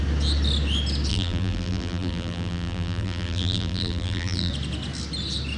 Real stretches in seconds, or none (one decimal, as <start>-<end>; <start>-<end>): 0.0-1.1; 4.5-5.6